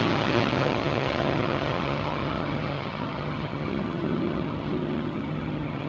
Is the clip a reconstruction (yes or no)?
yes